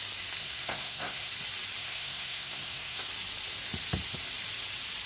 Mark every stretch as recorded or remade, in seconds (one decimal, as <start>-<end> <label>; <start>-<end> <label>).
0.0-0.4 recorded; 0.4-1.3 remade; 1.3-1.8 recorded; 1.8-3.0 remade; 3.0-5.1 recorded

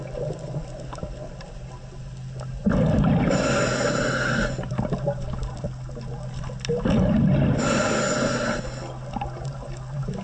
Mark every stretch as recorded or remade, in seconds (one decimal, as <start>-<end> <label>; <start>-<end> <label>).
0.0-10.2 recorded

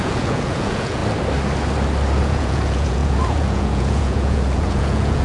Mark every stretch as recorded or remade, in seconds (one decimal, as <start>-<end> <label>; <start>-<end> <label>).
0.0-1.0 remade; 1.0-2.2 recorded; 2.2-5.2 remade

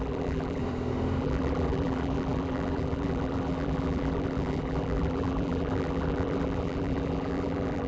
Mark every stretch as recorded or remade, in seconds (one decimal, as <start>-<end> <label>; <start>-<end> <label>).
0.0-0.6 remade; 0.6-1.2 recorded; 1.2-7.9 remade